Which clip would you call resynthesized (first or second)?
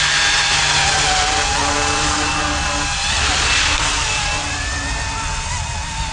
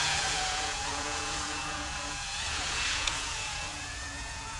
second